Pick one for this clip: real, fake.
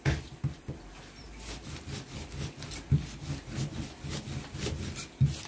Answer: real